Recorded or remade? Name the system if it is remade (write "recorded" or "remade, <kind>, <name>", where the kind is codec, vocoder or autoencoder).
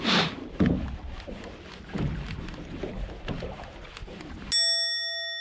recorded